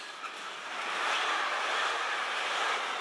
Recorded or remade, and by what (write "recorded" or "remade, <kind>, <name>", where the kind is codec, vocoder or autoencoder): recorded